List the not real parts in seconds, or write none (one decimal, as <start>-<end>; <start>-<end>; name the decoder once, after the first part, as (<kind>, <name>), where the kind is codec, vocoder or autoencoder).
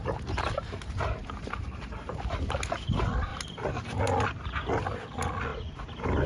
1.2-2.2 (vocoder, BigVGAN v2); 3.3-4.0